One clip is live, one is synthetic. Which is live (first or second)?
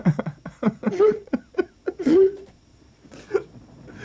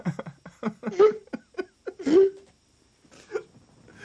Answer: second